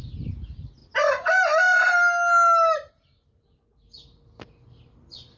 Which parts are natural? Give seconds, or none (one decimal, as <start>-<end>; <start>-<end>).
0.0-5.4